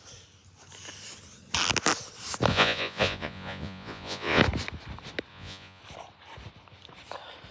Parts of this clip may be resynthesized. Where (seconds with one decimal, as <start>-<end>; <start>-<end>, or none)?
2.5-4.4; 5.3-5.8